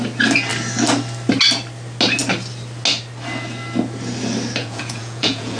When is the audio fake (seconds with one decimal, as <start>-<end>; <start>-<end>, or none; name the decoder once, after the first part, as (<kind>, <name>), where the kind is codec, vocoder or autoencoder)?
4.6-5.6 (vocoder, Vocos)